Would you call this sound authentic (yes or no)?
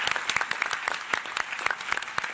yes